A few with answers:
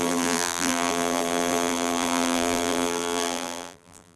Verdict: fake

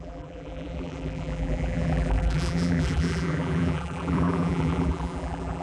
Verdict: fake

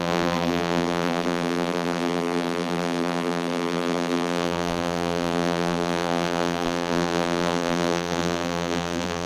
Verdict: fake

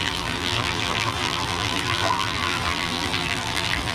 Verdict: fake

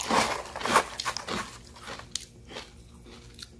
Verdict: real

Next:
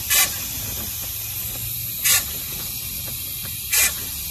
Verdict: real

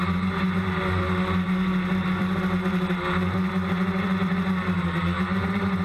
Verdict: fake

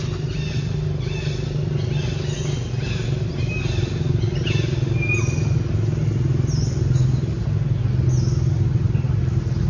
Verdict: real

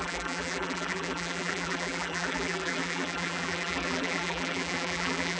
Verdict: fake